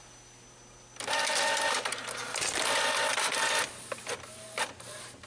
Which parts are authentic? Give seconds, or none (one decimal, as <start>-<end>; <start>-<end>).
0.0-5.3

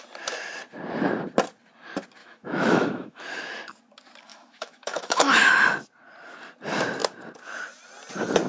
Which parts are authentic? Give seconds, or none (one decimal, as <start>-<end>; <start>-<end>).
0.0-2.2; 3.2-4.3; 5.5-8.5

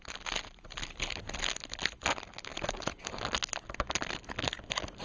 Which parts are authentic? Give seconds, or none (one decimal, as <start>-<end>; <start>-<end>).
0.0-5.0

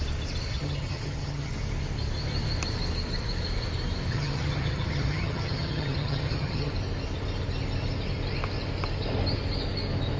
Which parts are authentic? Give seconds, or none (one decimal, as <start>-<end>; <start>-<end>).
0.0-0.5; 1.5-4.1; 6.7-10.2

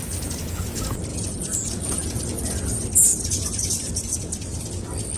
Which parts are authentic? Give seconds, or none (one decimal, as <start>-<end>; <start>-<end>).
0.0-1.1; 2.4-3.1; 4.5-5.2

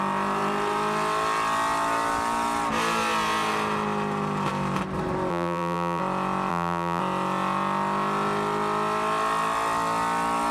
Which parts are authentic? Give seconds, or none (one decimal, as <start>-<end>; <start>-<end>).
0.0-5.3; 6.0-6.5; 7.0-10.5

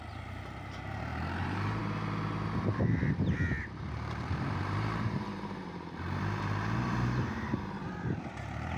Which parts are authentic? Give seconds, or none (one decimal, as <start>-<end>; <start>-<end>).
0.0-1.1; 1.8-3.6; 7.9-8.8

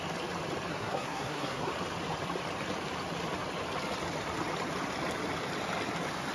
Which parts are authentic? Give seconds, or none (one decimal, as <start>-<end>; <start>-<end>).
0.0-0.7; 1.7-6.3